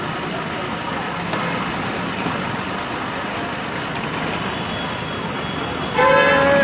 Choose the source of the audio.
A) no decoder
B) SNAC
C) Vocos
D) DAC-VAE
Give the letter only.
A